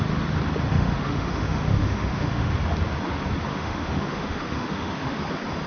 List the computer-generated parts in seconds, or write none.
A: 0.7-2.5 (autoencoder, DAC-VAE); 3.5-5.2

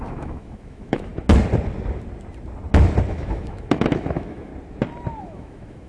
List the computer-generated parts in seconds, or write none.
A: 0.0-1.1 (autoencoder, DAC-VAE); 3.1-4.5; 5.2-5.9

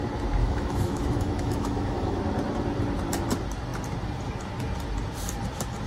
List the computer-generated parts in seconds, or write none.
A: 0.4-2.2 (autoencoder, DAC-VAE)

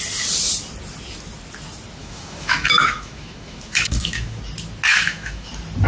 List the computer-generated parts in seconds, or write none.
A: 2.0-4.4 (autoencoder, DAC-VAE); 4.9-5.5

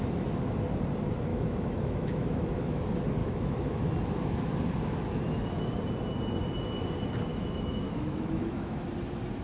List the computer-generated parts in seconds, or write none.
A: 1.3-2.8 (autoencoder, DAC-VAE); 3.2-3.9; 7.3-8.8